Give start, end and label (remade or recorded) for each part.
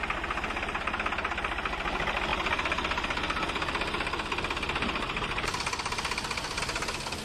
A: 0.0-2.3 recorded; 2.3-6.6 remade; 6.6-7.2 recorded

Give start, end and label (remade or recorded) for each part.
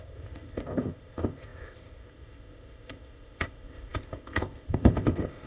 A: 0.0-5.5 remade